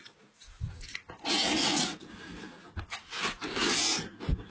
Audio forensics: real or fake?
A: real